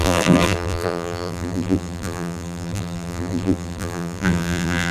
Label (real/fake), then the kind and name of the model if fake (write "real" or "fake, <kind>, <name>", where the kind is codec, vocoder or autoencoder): fake, vocoder, BigVGAN v2